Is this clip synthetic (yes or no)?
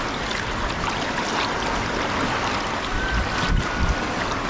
no